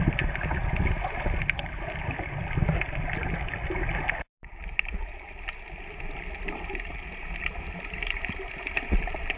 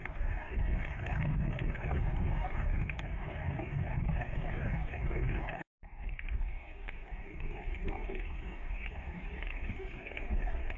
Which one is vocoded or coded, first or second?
second